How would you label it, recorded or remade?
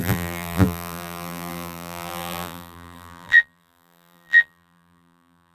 remade